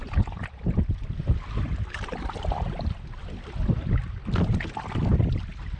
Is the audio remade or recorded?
recorded